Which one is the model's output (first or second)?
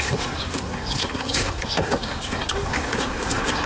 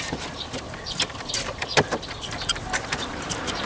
first